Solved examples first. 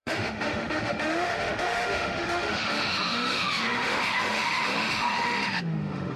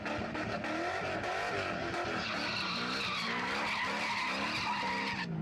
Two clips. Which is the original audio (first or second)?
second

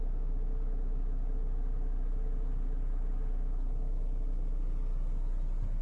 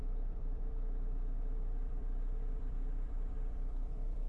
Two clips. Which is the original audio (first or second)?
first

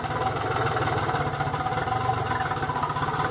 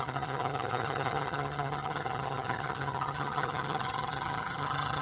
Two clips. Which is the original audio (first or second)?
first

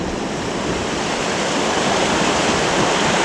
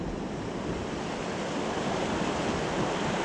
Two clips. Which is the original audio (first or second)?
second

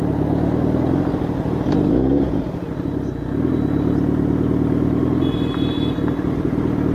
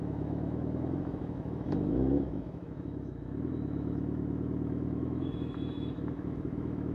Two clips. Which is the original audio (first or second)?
first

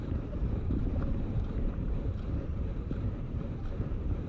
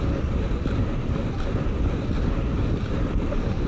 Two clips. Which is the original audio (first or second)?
second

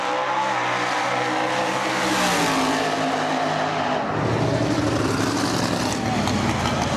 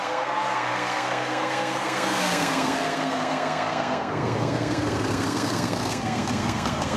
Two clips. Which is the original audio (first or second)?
first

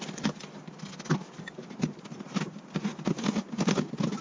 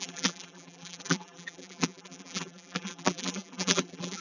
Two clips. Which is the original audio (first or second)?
first